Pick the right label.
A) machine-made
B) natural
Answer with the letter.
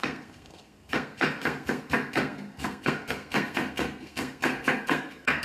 A